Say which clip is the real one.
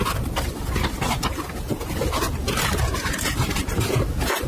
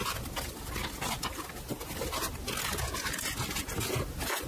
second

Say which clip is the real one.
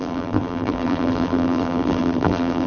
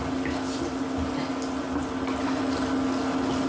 second